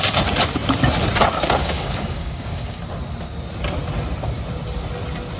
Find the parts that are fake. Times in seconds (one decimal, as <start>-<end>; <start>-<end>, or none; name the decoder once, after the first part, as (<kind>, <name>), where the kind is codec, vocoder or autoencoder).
1.6-2.8 (codec, DAC)